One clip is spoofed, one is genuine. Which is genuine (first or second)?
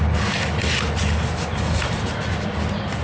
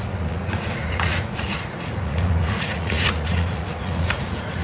first